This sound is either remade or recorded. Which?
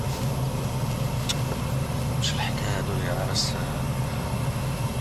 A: recorded